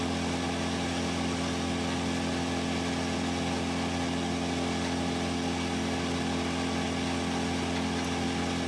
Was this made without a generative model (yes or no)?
yes